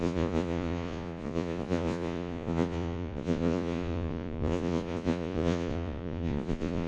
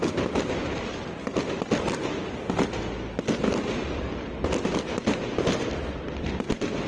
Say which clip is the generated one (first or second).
first